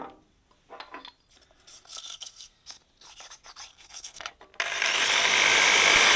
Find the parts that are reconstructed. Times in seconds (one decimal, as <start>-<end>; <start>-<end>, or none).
1.9-2.8; 3.7-4.3